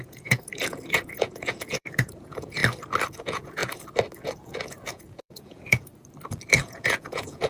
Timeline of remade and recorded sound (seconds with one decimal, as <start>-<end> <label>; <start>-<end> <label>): 0.0-2.6 remade; 2.6-3.2 recorded; 3.2-3.6 remade; 3.6-4.2 recorded; 4.2-5.9 remade; 5.9-6.6 recorded; 6.6-7.5 remade